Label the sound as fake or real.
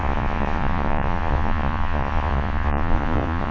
fake